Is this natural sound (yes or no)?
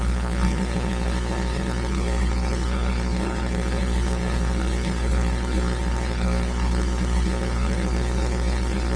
no